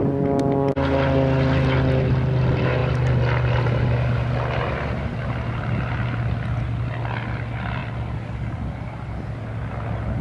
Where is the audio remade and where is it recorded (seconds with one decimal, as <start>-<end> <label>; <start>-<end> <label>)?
0.0-10.2 recorded